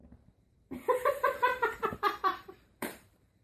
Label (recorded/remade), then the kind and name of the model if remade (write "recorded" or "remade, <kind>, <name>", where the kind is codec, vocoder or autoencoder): remade, vocoder, BigVGAN v2